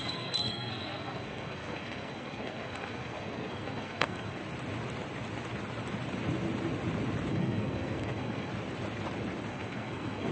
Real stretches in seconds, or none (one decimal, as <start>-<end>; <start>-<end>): 4.4-7.3; 8.5-9.5